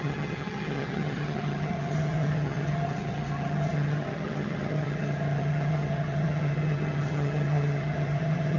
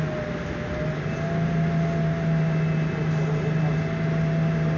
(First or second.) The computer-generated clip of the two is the first